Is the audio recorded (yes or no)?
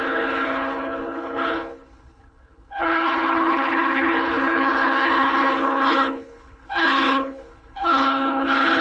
no